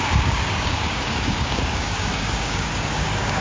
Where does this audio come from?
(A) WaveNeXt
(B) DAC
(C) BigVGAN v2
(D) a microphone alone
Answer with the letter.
B